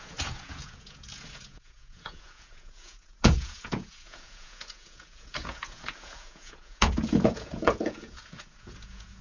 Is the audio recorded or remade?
remade